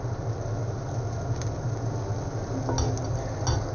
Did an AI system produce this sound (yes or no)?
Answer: no